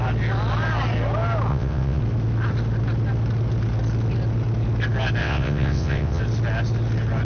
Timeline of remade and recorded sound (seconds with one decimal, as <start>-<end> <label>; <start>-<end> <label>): 0.0-1.5 recorded; 1.5-2.0 remade; 2.0-5.2 recorded; 5.2-6.2 remade; 6.2-7.2 recorded